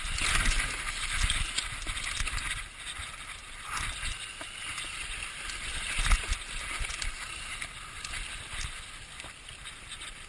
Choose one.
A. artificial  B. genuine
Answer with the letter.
B